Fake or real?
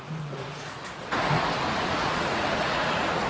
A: fake